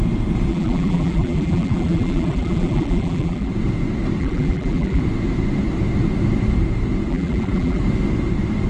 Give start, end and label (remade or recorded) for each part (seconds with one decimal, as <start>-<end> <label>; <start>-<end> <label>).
0.0-0.5 recorded; 0.5-3.5 remade; 3.5-4.2 recorded; 4.2-5.0 remade; 5.0-7.1 recorded; 7.1-7.8 remade; 7.8-8.7 recorded